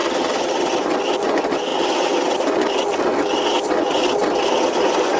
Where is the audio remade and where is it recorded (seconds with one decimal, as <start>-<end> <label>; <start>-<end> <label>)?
0.0-1.2 recorded; 1.2-1.7 remade; 1.7-4.8 recorded; 4.8-5.2 remade